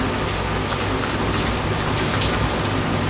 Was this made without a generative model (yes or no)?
yes